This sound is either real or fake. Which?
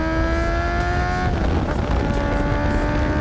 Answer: real